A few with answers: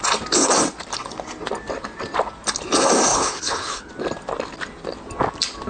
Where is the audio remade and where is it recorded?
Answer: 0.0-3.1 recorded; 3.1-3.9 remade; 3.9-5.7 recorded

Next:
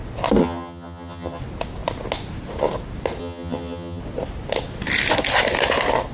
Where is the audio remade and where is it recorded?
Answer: 0.0-0.4 recorded; 0.4-1.4 remade; 1.4-3.2 recorded; 3.2-4.0 remade; 4.0-6.1 recorded

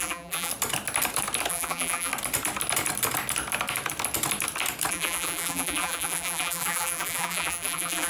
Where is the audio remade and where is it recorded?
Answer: 0.0-0.5 remade; 0.5-1.5 recorded; 1.5-2.1 remade; 2.1-4.9 recorded; 4.9-8.1 remade

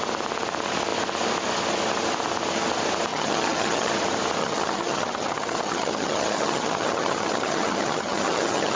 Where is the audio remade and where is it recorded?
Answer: 0.0-3.1 recorded; 3.1-3.9 remade; 3.9-4.4 recorded; 4.4-8.8 remade

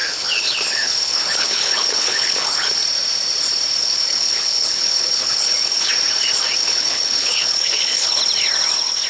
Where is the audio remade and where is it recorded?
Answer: 0.0-2.7 remade; 2.7-3.8 recorded; 3.8-5.9 remade; 5.9-6.6 recorded; 6.6-8.2 remade; 8.2-9.1 recorded

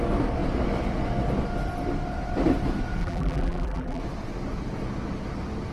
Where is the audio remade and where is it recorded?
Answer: 0.0-3.0 recorded; 3.0-4.0 remade; 4.0-5.7 recorded

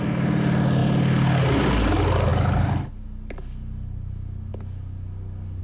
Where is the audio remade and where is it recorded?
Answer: 0.0-5.6 recorded

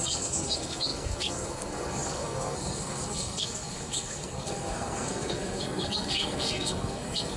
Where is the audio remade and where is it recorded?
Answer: 0.0-7.4 remade